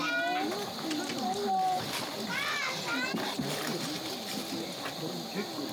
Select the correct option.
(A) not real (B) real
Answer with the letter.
B